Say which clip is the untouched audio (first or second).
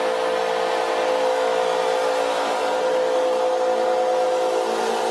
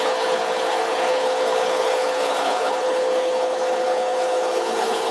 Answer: first